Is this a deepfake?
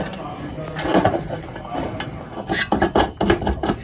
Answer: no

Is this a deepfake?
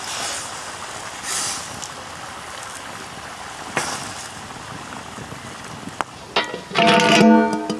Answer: no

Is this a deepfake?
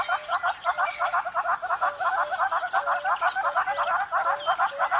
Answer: no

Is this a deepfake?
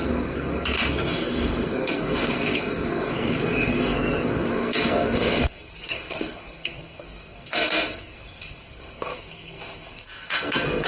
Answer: yes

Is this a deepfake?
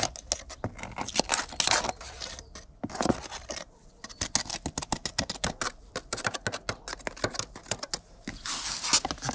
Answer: no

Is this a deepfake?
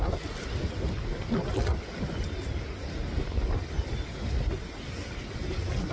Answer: no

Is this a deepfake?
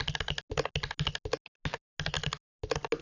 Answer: no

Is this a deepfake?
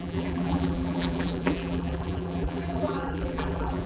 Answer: yes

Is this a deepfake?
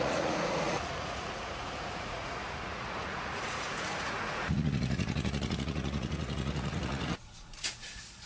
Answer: yes